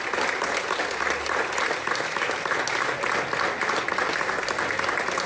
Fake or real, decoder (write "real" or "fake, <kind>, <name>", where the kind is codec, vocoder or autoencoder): real